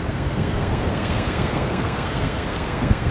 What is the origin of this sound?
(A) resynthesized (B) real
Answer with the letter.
A